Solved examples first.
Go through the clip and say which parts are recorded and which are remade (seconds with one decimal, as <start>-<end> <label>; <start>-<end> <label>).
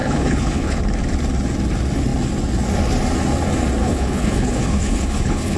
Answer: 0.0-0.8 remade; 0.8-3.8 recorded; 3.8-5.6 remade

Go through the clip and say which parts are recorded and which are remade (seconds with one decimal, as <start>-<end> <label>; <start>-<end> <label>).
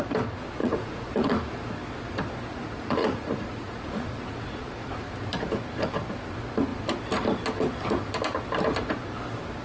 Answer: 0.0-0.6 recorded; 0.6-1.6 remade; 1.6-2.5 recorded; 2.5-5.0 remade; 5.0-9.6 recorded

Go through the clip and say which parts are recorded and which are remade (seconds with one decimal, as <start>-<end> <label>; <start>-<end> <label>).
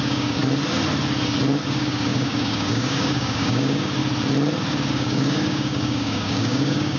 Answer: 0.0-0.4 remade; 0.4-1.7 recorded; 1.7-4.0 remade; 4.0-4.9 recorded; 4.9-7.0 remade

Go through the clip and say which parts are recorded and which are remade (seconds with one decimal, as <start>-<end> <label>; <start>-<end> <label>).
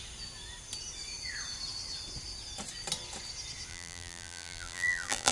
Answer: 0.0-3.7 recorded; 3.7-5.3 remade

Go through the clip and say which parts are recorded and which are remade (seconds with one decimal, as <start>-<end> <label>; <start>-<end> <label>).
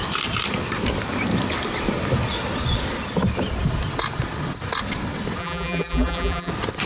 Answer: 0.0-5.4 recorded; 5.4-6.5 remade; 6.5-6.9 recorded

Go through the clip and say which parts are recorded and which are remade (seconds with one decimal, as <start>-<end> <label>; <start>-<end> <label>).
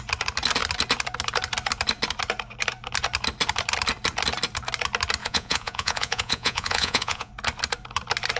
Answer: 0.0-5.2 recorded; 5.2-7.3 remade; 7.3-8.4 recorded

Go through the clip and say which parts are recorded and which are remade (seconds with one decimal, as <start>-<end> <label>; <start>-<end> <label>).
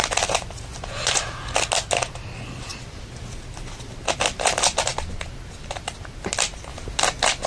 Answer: 0.0-0.7 recorded; 0.7-1.2 remade; 1.2-7.5 recorded